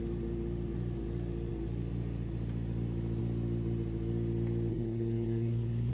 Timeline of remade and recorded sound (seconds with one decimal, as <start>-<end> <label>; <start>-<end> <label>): 0.0-4.7 recorded; 4.7-5.9 remade